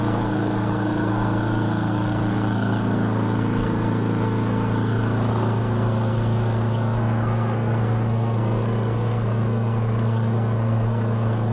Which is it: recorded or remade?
remade